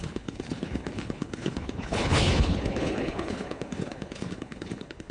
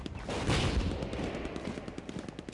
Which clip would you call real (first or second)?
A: second